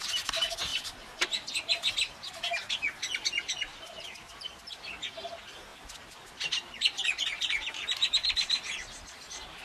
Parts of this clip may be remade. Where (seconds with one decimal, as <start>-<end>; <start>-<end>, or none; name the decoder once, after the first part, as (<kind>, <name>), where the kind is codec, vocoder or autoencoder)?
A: 0.7-1.9 (vocoder, BigVGAN v2); 3.7-4.9; 5.7-8.1